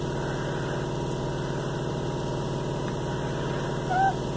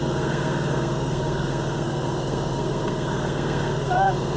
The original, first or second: first